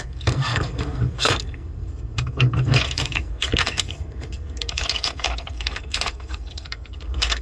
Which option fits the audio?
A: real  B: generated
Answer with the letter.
B